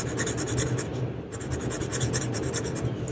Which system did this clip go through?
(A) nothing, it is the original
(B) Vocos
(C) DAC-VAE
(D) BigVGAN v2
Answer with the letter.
A